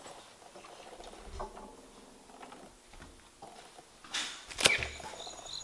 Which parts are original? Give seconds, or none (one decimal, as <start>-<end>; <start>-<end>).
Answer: 0.0-5.6